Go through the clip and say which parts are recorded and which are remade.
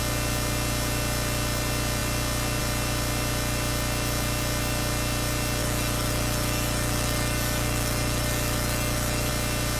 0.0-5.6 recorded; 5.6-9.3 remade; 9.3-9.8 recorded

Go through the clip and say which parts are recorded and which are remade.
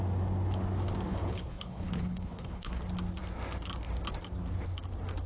0.0-1.1 recorded; 1.1-2.8 remade; 2.8-5.3 recorded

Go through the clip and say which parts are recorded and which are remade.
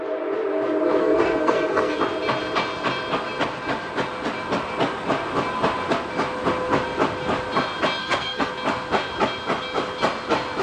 0.0-1.0 recorded; 1.0-2.0 remade; 2.0-8.0 recorded; 8.0-8.5 remade; 8.5-10.6 recorded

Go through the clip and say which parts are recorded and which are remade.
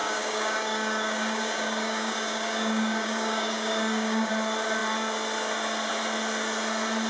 0.0-4.3 remade; 4.3-7.1 recorded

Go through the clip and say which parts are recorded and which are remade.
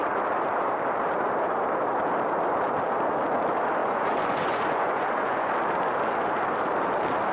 0.0-3.8 recorded; 3.8-5.5 remade; 5.5-7.3 recorded